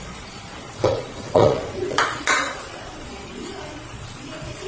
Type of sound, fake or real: fake